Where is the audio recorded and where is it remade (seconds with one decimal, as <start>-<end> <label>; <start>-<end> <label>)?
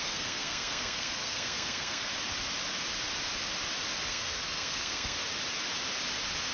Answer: 0.0-2.1 remade; 2.1-4.1 recorded; 4.1-5.2 remade; 5.2-6.5 recorded